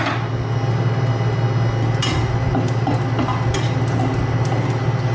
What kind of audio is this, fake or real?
real